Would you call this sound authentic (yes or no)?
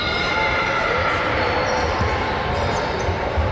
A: yes